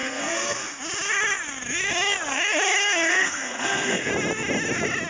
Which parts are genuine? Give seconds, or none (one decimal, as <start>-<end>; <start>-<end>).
0.8-3.1; 4.1-5.1